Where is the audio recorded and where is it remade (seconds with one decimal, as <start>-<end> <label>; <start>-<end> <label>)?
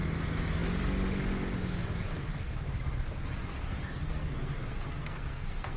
0.0-2.1 recorded; 2.1-2.7 remade; 2.7-3.4 recorded; 3.4-5.8 remade